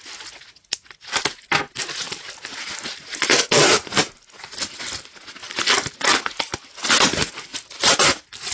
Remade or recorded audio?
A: recorded